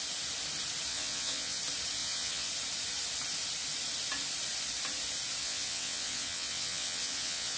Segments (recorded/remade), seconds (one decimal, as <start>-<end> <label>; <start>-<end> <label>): 0.0-0.9 recorded; 0.9-1.6 remade; 1.6-2.0 recorded; 2.0-2.5 remade; 2.5-5.4 recorded; 5.4-7.6 remade